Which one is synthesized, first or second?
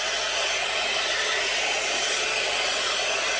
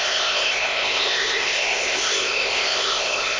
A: second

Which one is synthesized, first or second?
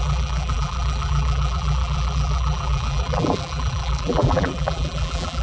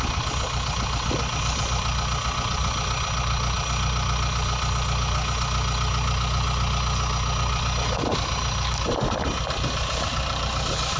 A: first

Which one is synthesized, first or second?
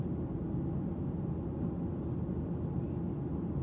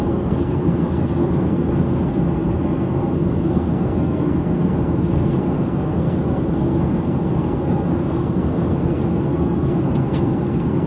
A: second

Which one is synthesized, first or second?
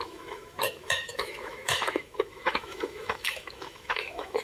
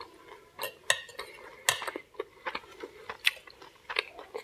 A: first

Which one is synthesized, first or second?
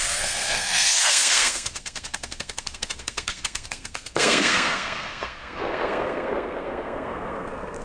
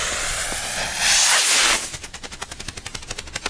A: first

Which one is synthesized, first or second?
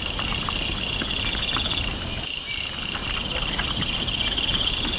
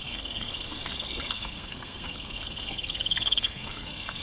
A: second